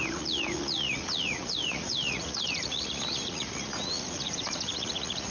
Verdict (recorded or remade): remade